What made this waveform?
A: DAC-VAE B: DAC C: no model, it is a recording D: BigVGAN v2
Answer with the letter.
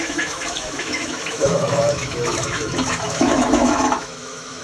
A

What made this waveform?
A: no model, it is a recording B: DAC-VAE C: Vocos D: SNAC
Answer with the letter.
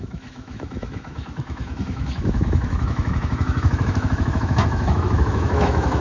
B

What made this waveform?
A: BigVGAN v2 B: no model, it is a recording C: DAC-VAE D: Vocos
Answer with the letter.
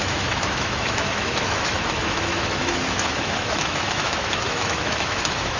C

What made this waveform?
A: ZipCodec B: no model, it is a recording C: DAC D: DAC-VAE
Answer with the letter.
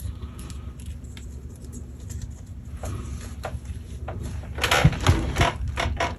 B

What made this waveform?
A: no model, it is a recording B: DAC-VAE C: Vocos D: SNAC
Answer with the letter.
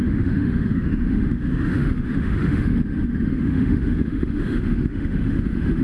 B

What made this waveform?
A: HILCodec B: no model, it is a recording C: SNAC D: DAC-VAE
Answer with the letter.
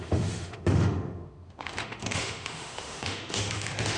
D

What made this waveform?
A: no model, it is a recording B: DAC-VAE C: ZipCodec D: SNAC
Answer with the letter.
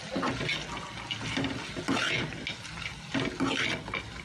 A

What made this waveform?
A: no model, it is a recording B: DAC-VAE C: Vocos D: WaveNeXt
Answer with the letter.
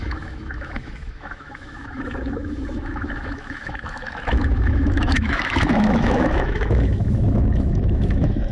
B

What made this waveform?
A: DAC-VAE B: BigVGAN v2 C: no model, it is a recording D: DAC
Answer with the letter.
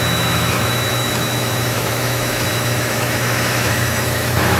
A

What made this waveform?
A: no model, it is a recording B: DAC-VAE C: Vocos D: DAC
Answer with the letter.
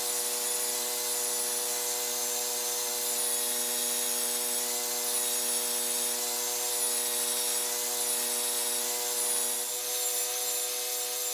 A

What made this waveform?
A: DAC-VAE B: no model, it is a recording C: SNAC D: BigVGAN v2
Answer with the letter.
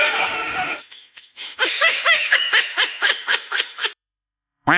A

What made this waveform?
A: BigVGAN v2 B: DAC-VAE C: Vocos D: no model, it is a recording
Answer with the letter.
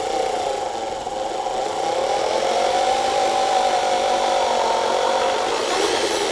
D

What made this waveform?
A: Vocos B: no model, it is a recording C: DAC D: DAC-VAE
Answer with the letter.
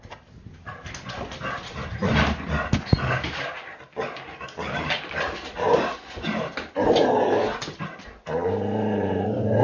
B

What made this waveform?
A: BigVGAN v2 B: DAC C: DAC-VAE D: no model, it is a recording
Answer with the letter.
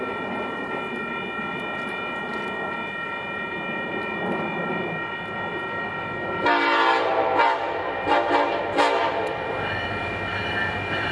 D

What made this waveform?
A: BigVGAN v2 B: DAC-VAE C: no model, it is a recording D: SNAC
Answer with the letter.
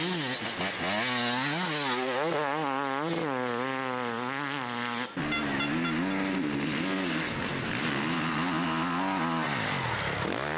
C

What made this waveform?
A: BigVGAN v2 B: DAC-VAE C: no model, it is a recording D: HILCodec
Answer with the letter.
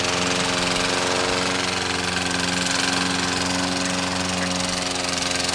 C